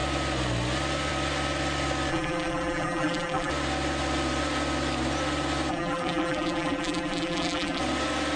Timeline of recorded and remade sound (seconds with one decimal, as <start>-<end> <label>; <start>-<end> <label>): 0.0-2.1 recorded; 2.1-3.5 remade; 3.5-5.7 recorded; 5.7-7.8 remade; 7.8-8.4 recorded